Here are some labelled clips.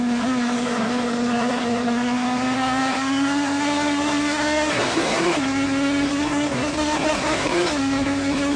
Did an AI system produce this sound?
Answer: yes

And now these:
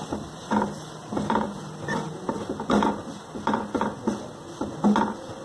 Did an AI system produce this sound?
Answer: no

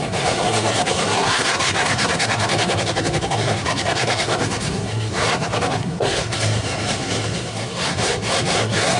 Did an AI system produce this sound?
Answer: yes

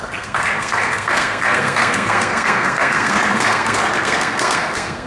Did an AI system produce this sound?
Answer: yes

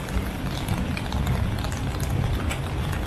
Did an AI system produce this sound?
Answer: no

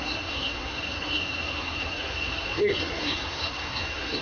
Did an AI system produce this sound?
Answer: yes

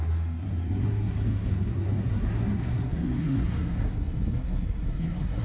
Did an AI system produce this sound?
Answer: yes